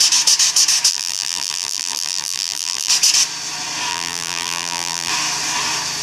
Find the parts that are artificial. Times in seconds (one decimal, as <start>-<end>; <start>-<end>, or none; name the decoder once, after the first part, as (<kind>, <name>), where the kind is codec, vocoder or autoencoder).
0.9-2.9 (vocoder, BigVGAN v2); 3.9-5.1

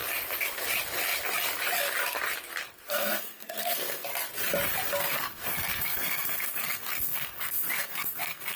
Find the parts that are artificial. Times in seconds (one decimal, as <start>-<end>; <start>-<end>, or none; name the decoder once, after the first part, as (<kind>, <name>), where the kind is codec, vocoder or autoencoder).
2.9-4.1 (codec, SNAC); 5.0-8.6